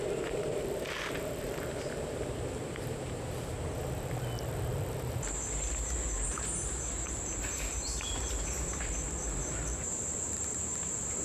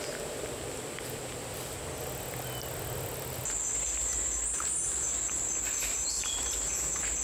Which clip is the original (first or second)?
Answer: second